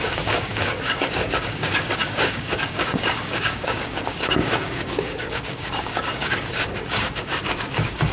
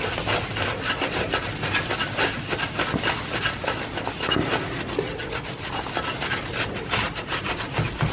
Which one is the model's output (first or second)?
first